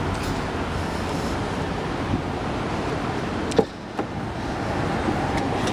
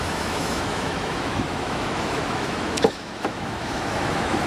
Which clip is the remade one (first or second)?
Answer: second